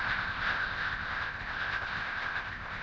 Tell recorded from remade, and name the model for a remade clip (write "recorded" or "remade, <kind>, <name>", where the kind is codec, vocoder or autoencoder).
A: remade, codec, ZipCodec